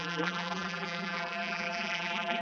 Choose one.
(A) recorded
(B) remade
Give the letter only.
B